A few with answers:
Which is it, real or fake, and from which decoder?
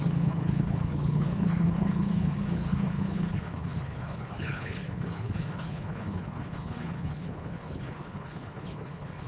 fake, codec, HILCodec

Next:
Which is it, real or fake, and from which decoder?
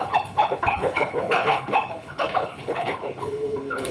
fake, codec, HILCodec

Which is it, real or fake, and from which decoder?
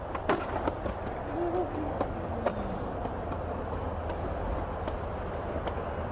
real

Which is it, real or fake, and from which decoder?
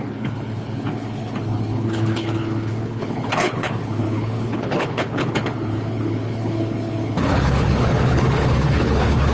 fake, codec, HILCodec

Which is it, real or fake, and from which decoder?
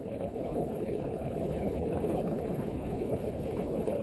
fake, codec, HILCodec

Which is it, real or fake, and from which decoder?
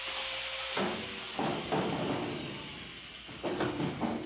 real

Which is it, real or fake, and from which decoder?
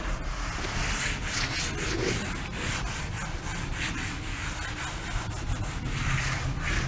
real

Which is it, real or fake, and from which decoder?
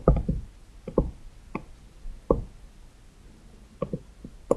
real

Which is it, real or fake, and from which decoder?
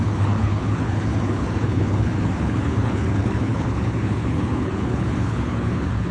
fake, codec, HILCodec